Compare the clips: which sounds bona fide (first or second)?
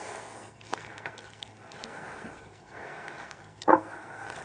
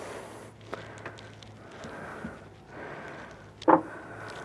second